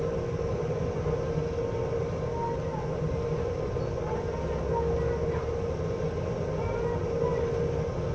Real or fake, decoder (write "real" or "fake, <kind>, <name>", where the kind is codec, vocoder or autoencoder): real